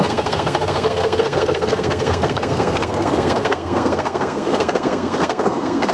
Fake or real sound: fake